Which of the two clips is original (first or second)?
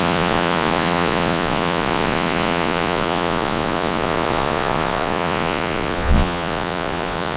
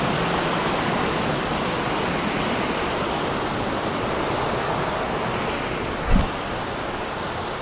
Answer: second